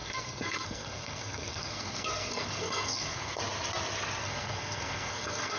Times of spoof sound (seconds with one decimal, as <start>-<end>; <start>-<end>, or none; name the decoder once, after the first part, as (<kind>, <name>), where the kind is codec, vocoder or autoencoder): 0.0-3.4 (codec, SNAC); 4.2-5.6